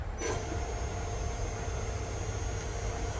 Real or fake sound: real